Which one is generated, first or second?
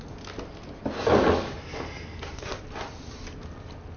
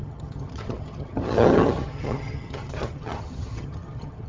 second